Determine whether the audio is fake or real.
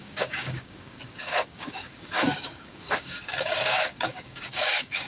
fake